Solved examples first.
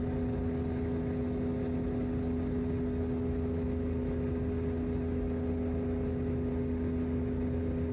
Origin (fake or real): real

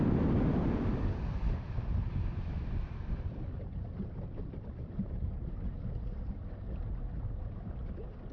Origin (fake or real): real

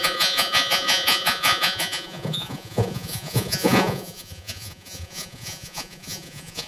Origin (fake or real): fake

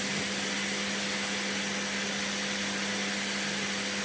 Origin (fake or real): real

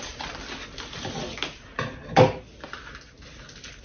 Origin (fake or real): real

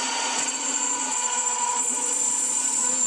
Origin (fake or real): fake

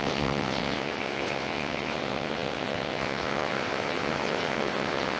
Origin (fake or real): fake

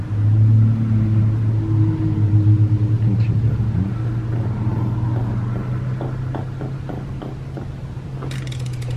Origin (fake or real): real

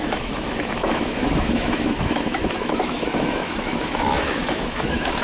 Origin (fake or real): fake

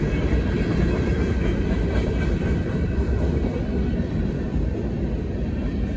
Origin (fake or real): fake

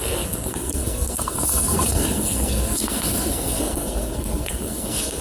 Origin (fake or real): fake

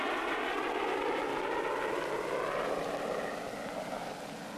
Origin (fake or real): real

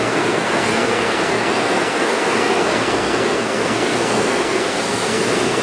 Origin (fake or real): fake